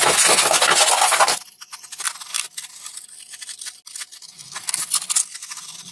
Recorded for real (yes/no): yes